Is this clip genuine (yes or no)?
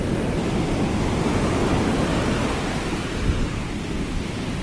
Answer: yes